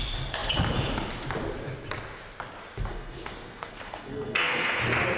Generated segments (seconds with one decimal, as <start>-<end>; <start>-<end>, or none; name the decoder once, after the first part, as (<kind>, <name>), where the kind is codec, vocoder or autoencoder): 2.9-4.8 (codec, SNAC)